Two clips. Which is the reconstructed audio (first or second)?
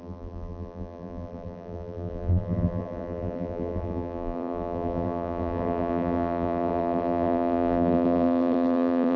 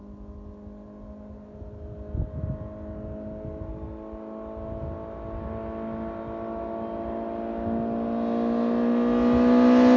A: first